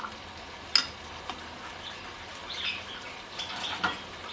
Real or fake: real